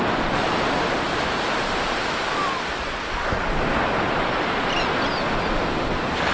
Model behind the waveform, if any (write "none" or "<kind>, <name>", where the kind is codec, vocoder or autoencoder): none